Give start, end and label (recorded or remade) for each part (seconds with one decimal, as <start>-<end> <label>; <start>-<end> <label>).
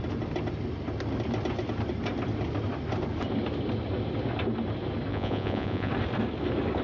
0.0-5.1 recorded; 5.1-5.9 remade; 5.9-6.8 recorded